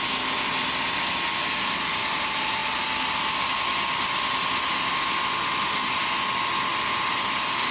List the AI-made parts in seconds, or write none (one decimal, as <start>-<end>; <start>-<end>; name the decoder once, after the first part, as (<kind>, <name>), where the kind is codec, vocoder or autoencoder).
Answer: none